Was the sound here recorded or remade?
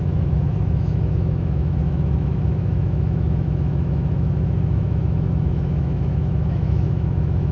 remade